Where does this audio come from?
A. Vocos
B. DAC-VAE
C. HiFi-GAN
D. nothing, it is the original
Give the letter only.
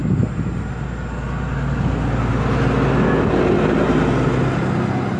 D